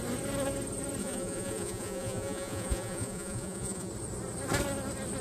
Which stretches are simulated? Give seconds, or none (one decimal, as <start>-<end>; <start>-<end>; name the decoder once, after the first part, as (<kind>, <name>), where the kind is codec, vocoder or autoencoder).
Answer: 1.0-3.9 (vocoder, Vocos)